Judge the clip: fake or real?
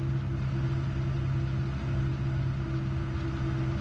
real